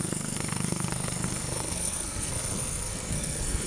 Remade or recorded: remade